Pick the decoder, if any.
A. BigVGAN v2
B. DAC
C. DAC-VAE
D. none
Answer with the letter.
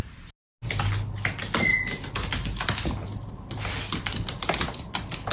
D